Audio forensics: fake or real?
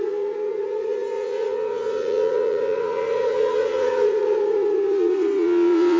fake